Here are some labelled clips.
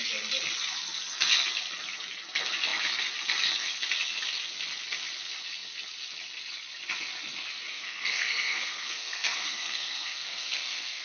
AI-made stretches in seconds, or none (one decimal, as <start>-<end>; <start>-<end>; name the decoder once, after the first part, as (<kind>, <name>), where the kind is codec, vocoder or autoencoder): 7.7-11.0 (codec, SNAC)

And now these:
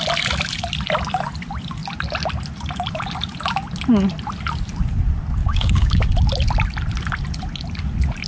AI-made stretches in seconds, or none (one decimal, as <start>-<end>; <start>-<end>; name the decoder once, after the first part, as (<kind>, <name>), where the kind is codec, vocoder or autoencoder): 5.4-6.1 (codec, DAC)

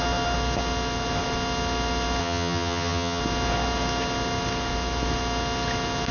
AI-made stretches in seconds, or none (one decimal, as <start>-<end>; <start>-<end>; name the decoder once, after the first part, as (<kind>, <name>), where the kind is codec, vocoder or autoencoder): 2.2-3.2 (vocoder, HiFi-GAN)